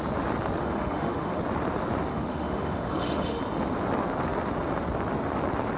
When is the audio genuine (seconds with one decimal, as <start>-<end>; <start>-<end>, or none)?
0.0-0.6; 1.4-2.1; 3.4-5.8